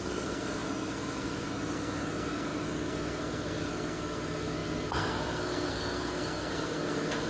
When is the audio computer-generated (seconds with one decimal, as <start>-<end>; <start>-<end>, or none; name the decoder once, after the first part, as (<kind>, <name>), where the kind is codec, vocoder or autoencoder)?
0.0-7.3 (codec, SNAC)